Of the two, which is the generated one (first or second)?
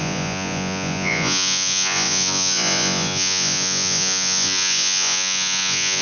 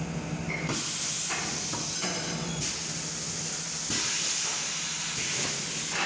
first